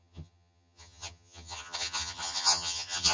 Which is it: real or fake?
fake